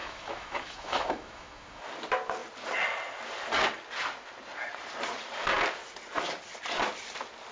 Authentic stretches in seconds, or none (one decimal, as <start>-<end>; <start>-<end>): 1.8-7.5